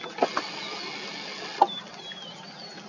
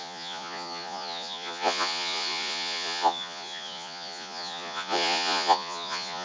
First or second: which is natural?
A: first